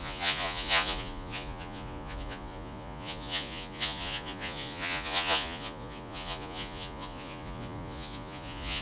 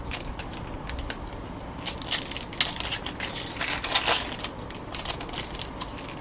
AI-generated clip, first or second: first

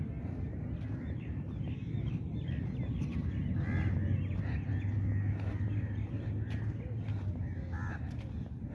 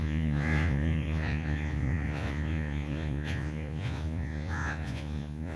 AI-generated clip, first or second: second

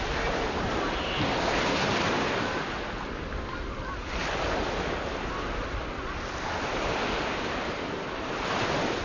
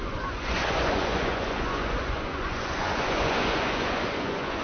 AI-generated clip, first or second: second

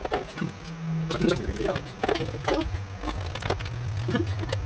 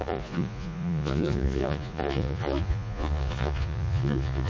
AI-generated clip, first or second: second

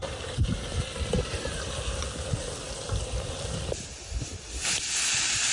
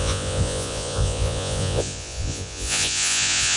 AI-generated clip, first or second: second